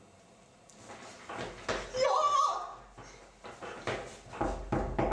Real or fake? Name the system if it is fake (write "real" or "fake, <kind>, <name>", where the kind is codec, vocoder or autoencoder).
real